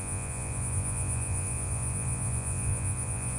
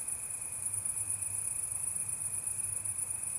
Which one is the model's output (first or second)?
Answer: first